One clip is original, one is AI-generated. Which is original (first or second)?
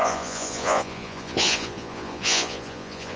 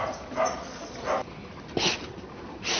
second